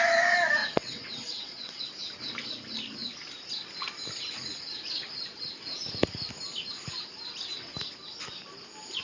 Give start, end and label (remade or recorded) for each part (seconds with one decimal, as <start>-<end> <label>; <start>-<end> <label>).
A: 0.0-0.6 recorded; 0.6-1.8 remade; 1.8-9.0 recorded